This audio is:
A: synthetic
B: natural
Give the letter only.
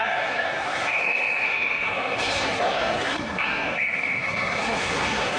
A